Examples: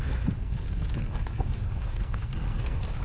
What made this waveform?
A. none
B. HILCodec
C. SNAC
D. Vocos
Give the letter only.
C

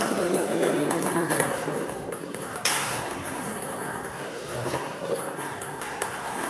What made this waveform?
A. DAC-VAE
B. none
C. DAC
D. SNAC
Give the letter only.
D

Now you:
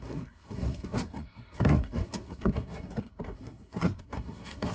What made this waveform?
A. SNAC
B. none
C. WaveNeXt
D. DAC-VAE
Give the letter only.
A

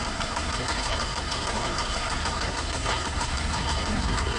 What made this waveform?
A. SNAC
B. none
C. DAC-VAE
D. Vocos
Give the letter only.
A